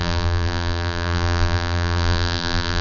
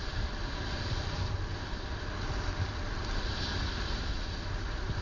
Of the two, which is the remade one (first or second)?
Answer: first